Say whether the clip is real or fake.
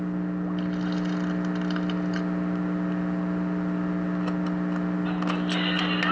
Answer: real